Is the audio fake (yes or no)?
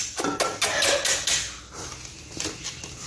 no